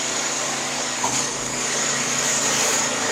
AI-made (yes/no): yes